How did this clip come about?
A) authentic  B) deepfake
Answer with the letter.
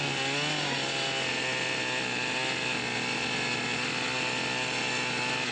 A